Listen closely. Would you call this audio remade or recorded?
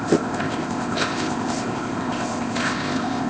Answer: remade